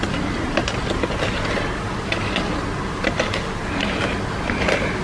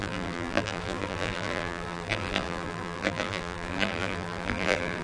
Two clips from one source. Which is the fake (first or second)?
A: second